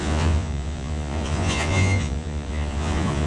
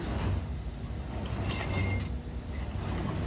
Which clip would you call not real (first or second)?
first